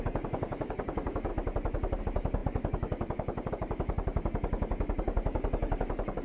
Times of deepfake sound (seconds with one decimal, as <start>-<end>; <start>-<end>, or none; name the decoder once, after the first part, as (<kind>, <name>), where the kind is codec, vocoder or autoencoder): 0.0-1.3 (codec, DAC); 2.0-6.2